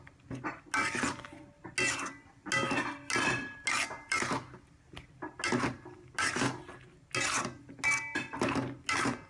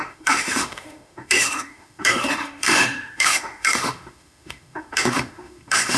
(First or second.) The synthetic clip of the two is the second